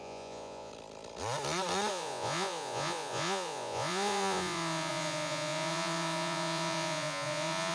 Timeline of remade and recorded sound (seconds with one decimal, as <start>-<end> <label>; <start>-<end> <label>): 0.0-0.7 remade; 0.7-1.9 recorded; 1.9-7.7 remade